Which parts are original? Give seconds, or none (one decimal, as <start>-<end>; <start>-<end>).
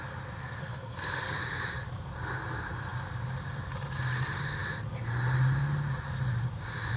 0.0-0.6; 1.4-7.0